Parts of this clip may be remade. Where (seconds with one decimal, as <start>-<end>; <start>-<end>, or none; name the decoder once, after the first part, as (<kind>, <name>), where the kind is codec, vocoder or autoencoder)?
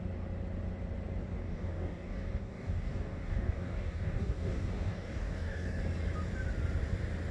1.4-5.8 (codec, DAC)